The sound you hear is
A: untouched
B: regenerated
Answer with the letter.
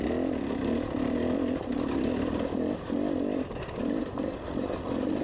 A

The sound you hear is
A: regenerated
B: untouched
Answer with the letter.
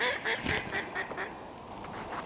B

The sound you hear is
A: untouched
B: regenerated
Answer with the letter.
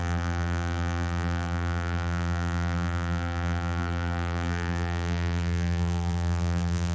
B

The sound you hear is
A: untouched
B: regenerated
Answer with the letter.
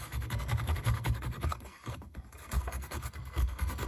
B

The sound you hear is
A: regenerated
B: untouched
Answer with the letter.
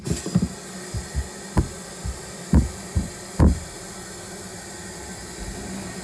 B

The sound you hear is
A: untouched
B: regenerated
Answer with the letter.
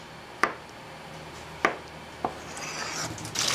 A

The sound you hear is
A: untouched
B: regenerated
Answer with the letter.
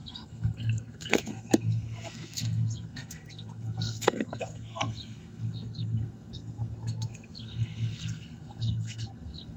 B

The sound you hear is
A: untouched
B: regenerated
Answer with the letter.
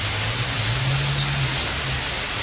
A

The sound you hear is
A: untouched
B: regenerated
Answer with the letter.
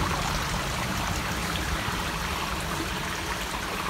A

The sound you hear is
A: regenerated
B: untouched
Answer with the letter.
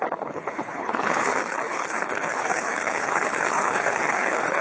A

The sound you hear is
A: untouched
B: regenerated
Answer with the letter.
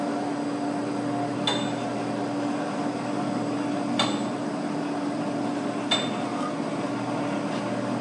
A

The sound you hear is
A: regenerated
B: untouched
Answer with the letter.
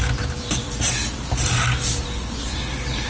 B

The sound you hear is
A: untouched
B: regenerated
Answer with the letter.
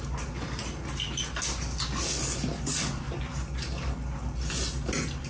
A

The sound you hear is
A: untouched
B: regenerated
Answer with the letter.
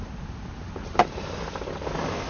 A